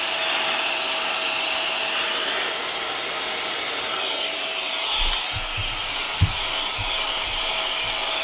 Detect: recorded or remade recorded